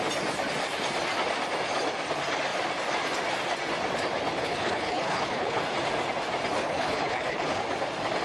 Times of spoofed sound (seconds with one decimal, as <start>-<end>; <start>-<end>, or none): 4.4-5.6; 6.6-7.6